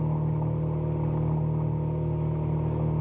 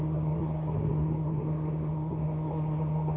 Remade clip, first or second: second